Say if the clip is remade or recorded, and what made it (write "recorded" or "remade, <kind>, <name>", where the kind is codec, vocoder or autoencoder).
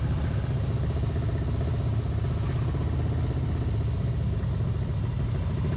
recorded